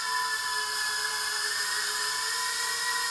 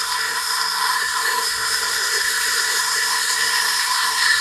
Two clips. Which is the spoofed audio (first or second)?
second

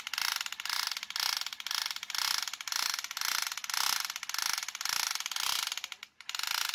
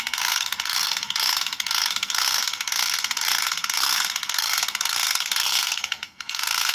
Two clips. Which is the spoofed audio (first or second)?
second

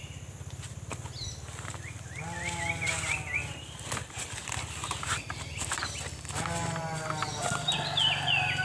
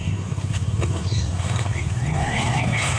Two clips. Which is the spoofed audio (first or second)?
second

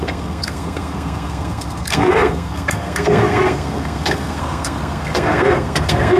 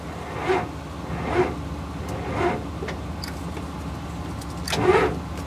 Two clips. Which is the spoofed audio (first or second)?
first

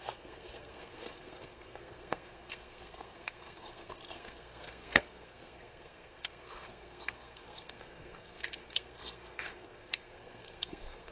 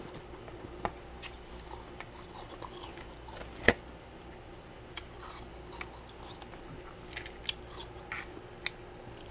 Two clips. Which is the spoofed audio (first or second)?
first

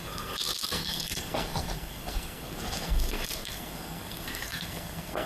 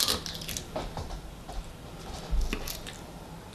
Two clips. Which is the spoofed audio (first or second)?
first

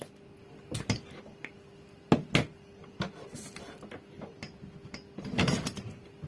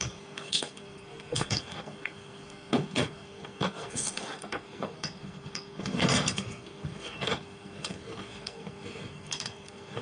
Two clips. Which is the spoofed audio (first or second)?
second